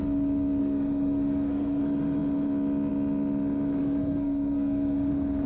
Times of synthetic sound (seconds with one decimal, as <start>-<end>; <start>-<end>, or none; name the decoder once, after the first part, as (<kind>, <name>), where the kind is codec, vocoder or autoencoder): 0.6-1.8 (codec, SNAC); 3.8-5.1